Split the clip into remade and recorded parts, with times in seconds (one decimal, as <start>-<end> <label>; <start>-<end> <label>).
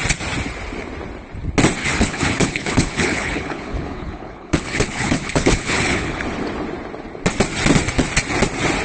0.0-1.8 recorded; 1.8-6.2 remade; 6.2-8.8 recorded